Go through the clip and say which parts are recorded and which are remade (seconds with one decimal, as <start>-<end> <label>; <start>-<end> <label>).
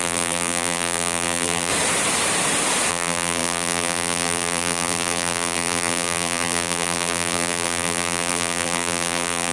0.0-1.7 remade; 1.7-2.9 recorded; 2.9-9.5 remade